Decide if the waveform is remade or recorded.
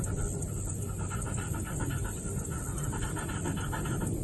recorded